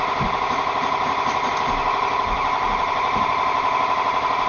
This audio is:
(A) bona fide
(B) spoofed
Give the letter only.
A